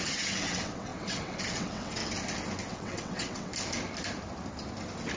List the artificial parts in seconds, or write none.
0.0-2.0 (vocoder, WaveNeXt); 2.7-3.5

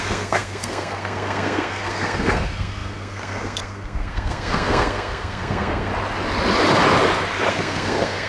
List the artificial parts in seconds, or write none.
0.0-5.9 (codec, SNAC); 7.5-8.3

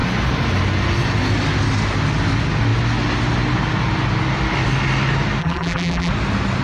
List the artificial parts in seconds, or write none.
5.4-6.1 (vocoder, BigVGAN v2)

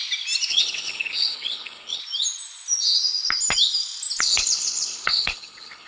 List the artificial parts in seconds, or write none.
0.5-2.0 (codec, HILCodec); 4.2-5.9

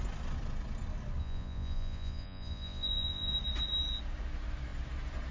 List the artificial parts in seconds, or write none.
1.2-3.3 (vocoder, Vocos)